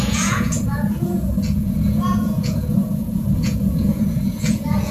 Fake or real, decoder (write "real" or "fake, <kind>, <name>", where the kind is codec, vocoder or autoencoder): fake, vocoder, Vocos